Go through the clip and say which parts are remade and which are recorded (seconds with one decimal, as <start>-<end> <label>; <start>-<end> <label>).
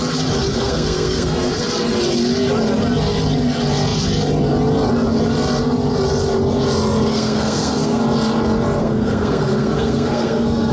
0.0-0.5 recorded; 0.5-1.6 remade; 1.6-7.1 recorded; 7.1-8.0 remade; 8.0-8.8 recorded; 8.8-10.7 remade